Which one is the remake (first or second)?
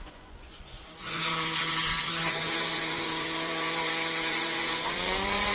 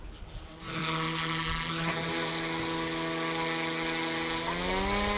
first